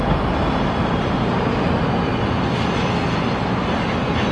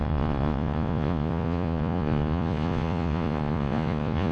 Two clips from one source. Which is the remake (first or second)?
second